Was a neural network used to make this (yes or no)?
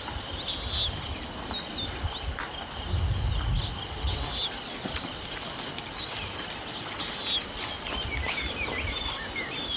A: no